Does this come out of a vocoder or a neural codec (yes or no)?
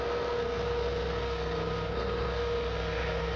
yes